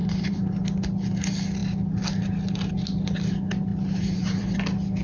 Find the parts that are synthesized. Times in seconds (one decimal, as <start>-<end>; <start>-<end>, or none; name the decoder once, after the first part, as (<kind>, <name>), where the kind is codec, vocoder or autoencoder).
0.0-0.6 (vocoder, BigVGAN v2); 3.7-4.6